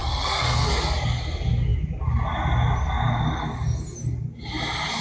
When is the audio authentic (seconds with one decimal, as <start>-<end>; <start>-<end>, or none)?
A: 0.7-5.0